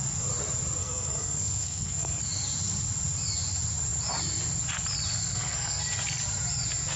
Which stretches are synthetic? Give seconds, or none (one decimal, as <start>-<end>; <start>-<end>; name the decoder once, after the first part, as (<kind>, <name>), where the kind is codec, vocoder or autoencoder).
0.8-2.2 (codec, SNAC); 5.3-5.8